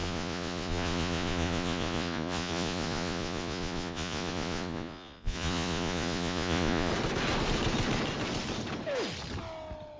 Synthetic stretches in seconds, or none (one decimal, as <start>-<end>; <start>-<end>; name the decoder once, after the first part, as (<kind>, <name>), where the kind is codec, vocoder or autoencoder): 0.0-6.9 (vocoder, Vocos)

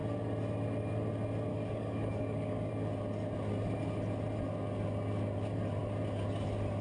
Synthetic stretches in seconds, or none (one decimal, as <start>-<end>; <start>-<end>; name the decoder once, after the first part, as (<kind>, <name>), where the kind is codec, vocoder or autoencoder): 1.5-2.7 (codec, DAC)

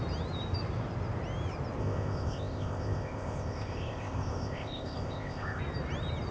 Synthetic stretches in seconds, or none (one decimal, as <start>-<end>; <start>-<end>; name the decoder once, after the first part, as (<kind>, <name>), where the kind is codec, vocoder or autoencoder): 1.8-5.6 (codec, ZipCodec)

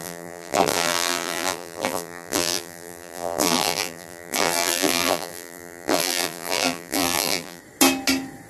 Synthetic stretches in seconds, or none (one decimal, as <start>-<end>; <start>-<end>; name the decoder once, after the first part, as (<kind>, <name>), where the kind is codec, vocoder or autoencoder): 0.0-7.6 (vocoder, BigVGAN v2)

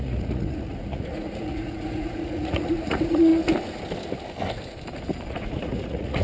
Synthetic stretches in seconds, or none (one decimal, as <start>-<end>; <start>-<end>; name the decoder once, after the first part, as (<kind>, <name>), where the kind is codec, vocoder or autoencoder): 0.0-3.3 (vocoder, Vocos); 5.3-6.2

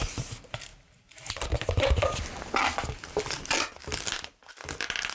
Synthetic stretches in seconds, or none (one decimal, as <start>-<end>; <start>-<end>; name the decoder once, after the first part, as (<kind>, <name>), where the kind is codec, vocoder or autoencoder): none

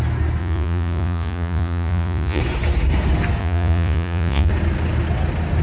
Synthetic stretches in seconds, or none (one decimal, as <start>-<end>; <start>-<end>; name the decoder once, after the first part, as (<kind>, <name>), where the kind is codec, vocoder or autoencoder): 0.4-2.4 (vocoder, Vocos); 3.4-4.5